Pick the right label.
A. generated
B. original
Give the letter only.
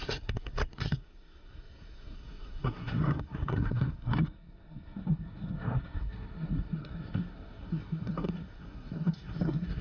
A